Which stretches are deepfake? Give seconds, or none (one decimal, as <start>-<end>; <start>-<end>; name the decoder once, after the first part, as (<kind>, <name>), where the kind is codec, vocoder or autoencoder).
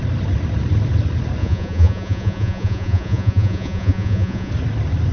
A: 1.4-4.5 (vocoder, Vocos)